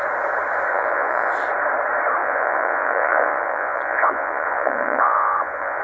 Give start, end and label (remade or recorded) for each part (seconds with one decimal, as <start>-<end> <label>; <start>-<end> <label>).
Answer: 0.0-0.7 recorded; 0.7-1.3 remade; 1.3-2.2 recorded; 2.2-5.8 remade